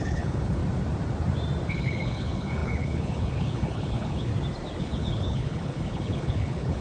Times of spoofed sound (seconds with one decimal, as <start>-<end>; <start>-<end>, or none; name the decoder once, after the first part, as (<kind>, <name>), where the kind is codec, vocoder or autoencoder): 0.0-0.6 (codec, HILCodec); 1.7-4.3; 4.8-6.8